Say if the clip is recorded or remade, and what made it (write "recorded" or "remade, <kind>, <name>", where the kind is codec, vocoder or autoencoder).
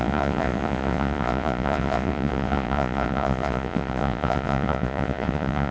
remade, vocoder, Vocos